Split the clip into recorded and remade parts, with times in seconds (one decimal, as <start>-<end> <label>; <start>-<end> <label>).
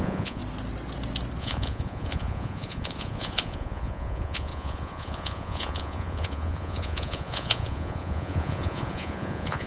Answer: 0.0-0.4 remade; 0.4-1.4 recorded; 1.4-9.7 remade